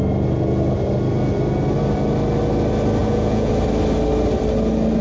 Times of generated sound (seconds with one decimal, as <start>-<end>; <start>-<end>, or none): 3.0-3.5